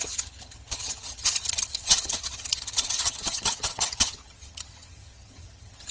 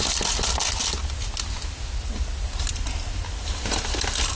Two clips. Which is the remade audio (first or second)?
first